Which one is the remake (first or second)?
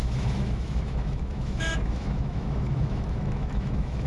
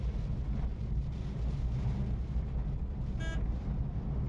first